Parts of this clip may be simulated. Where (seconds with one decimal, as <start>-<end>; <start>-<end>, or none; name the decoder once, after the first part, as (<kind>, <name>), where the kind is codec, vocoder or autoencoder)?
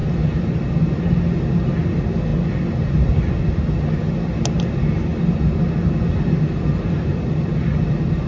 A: none